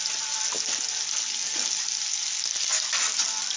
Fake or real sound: real